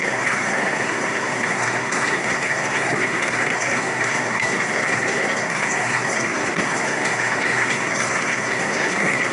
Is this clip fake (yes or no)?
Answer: yes